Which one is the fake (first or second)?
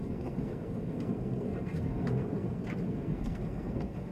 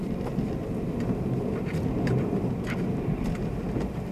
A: first